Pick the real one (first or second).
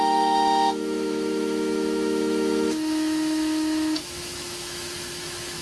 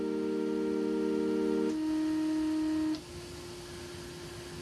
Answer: second